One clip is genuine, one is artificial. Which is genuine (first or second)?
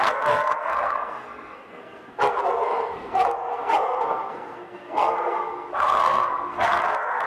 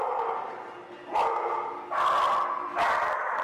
second